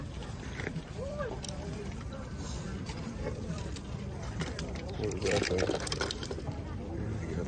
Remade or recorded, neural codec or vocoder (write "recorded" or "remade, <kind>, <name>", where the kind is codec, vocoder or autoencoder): remade, vocoder, BigVGAN v2